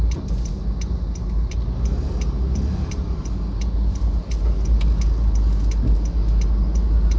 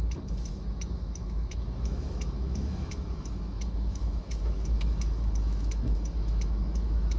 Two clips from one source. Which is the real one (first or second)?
first